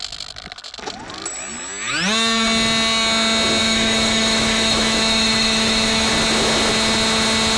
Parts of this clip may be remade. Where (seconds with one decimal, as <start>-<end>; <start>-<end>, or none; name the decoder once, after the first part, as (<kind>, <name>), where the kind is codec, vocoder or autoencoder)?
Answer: 3.6-6.1 (autoencoder, DAC-VAE)